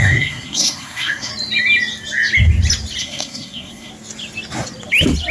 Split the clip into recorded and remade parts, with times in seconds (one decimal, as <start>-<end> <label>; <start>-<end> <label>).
0.0-1.3 remade; 1.3-3.0 recorded; 3.0-3.9 remade; 3.9-5.3 recorded